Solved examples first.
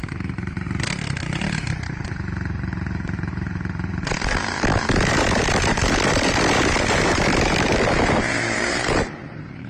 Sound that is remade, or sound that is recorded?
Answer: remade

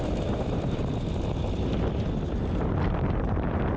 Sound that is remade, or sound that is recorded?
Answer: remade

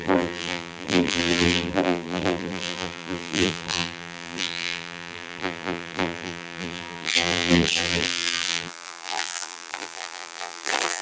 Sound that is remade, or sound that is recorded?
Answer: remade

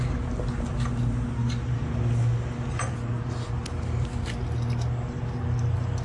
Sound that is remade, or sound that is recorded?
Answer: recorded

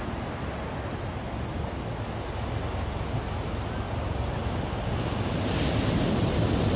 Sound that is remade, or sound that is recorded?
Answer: recorded